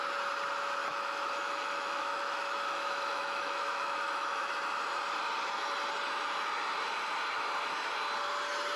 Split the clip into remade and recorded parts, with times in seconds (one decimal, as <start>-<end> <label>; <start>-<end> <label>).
0.0-0.8 recorded; 0.8-4.5 remade; 4.5-8.8 recorded